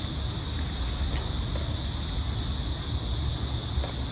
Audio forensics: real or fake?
real